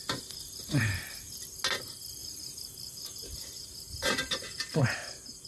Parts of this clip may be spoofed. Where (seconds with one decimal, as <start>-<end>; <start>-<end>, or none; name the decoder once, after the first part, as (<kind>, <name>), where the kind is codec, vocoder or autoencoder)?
2.2-4.8 (vocoder, BigVGAN v2)